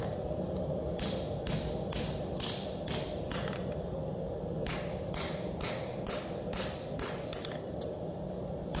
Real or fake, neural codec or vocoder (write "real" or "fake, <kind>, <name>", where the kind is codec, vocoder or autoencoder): fake, vocoder, BigVGAN v2